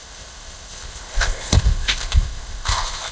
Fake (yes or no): yes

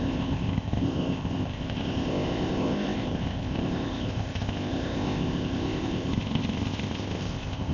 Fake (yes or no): yes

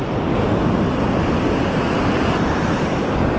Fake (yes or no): no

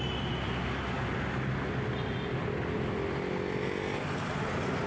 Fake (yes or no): no